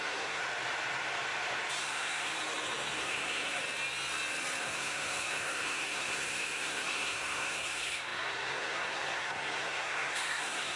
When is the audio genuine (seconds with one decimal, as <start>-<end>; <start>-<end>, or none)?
0.4-1.8; 2.3-3.0; 3.6-4.6